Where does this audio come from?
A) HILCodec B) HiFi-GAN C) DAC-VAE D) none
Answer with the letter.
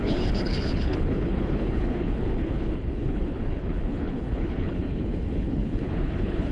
A